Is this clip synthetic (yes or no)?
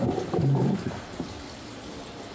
no